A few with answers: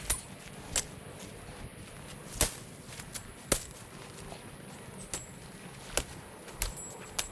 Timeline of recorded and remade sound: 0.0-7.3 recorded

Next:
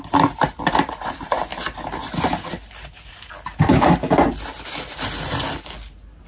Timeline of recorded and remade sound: 0.0-6.3 recorded

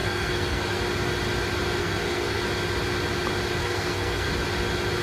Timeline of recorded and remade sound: 0.0-0.8 remade; 0.8-1.8 recorded; 1.8-2.4 remade; 2.4-3.6 recorded; 3.6-4.3 remade; 4.3-5.0 recorded

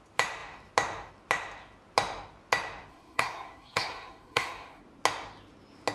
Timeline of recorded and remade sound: 0.0-2.9 recorded; 2.9-4.8 remade; 4.8-5.9 recorded

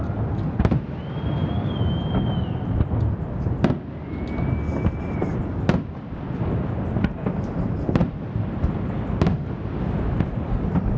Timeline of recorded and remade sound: 0.0-11.0 recorded